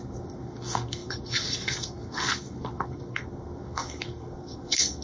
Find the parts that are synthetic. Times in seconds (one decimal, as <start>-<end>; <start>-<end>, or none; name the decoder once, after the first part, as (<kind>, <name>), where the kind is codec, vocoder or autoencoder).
0.0-5.0 (codec, SNAC)